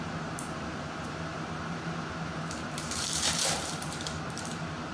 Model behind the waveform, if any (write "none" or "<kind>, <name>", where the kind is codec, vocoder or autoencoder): vocoder, BigVGAN v2